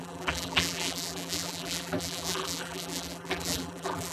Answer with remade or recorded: remade